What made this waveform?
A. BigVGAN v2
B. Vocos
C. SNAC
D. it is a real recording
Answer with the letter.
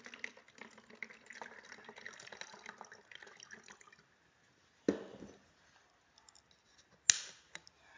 D